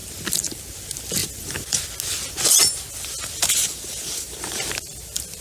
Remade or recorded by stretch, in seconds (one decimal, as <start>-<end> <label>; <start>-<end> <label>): 0.0-1.2 recorded; 1.2-1.8 remade; 1.8-3.6 recorded; 3.6-4.7 remade; 4.7-5.4 recorded